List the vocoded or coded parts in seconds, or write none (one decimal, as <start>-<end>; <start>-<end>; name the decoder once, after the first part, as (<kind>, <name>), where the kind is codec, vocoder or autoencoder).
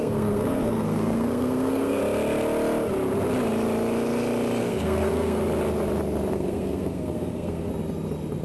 0.0-2.0 (codec, SNAC); 4.6-5.4; 6.3-7.7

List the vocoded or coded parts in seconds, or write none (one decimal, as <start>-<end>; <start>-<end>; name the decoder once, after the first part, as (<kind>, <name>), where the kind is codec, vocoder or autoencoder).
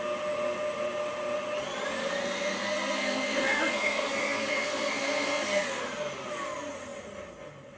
2.2-5.8 (codec, SNAC)